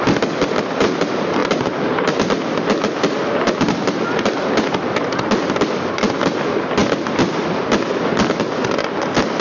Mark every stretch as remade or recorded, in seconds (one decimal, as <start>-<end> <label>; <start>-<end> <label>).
0.0-9.4 recorded

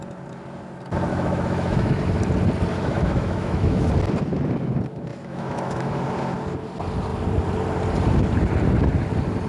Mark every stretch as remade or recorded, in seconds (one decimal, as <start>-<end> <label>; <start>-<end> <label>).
0.0-1.1 recorded; 1.1-2.0 remade; 2.0-2.7 recorded; 2.7-3.9 remade; 3.9-5.1 recorded; 5.1-6.0 remade; 6.0-9.5 recorded

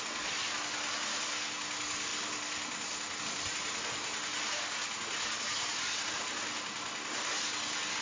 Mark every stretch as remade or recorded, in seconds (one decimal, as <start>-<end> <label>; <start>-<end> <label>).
0.0-8.0 recorded

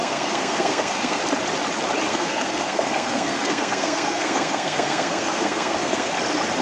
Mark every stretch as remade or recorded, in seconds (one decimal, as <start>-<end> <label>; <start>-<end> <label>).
0.0-1.2 remade; 1.2-2.1 recorded; 2.1-6.1 remade; 6.1-6.6 recorded